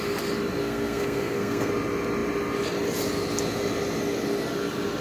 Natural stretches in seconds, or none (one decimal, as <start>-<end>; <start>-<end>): 0.0-0.6; 1.7-5.0